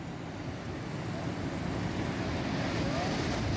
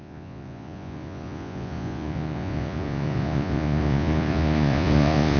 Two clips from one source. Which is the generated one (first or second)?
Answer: second